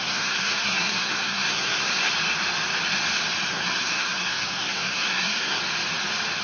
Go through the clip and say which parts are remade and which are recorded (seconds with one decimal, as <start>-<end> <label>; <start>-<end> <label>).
0.0-2.1 remade; 2.1-3.5 recorded; 3.5-5.6 remade; 5.6-6.4 recorded